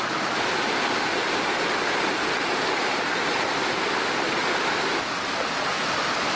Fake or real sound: real